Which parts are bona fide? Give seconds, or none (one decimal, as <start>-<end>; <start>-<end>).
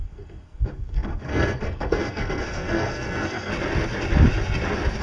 3.5-5.0